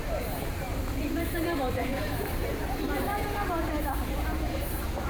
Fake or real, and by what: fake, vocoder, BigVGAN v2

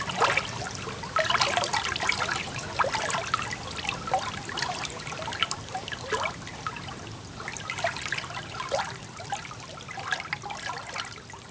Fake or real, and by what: real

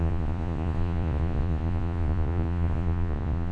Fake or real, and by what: fake, vocoder, Vocos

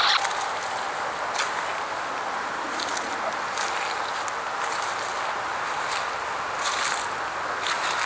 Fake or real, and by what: real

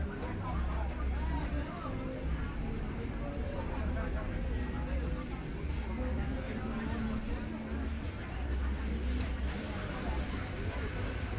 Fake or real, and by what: real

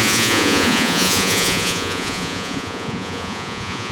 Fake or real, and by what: fake, vocoder, Vocos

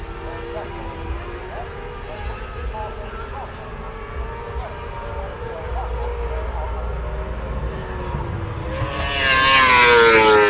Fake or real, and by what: real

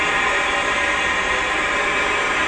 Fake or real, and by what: real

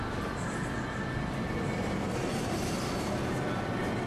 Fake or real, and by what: real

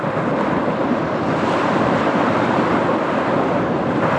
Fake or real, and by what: real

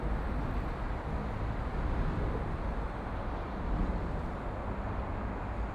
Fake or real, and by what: real